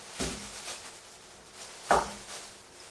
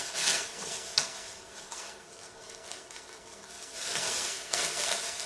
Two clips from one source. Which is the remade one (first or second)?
second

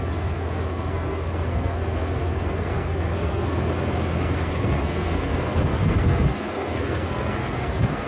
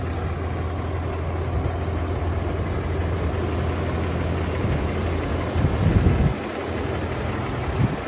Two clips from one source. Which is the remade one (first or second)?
first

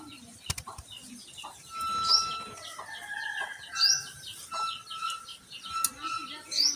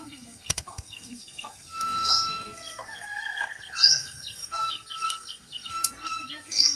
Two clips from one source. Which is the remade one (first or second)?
second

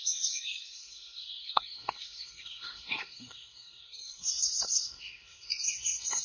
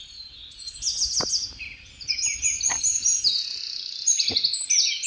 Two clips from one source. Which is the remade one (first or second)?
first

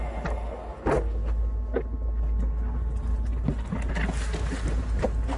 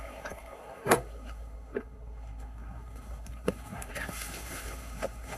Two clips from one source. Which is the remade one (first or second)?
second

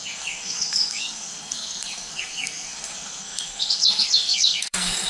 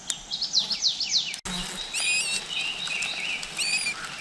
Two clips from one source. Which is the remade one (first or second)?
first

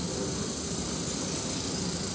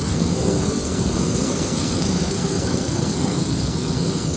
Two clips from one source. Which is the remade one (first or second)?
second